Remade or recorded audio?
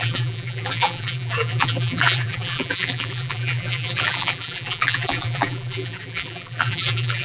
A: remade